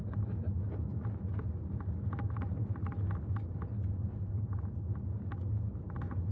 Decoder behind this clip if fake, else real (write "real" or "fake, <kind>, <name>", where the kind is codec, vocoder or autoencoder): real